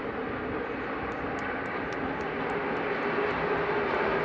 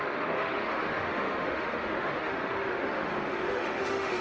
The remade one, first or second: second